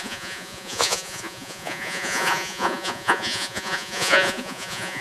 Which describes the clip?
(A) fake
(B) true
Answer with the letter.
A